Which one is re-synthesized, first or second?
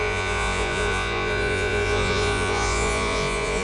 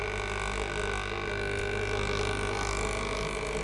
first